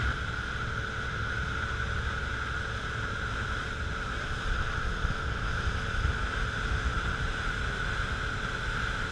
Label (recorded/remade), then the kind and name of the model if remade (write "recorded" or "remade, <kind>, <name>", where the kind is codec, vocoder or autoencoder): recorded